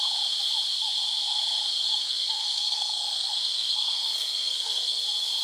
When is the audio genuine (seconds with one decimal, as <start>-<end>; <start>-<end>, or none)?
0.0-1.8; 5.0-5.4